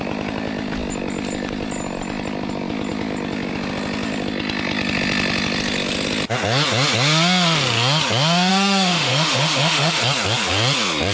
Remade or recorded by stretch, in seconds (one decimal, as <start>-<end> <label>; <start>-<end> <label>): 0.0-8.5 recorded; 8.5-10.0 remade; 10.0-11.1 recorded